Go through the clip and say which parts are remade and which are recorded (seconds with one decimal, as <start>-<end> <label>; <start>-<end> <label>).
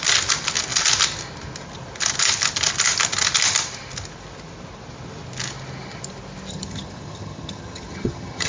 0.0-6.5 recorded; 6.5-8.5 remade